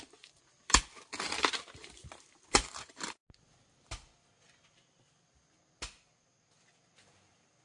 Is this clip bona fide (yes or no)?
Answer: yes